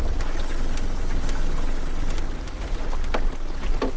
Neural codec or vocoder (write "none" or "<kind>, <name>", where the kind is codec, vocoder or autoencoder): none